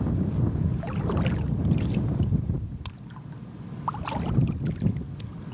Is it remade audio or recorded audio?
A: recorded